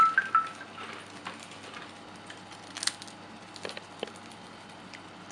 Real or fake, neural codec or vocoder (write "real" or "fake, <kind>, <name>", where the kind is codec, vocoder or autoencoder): real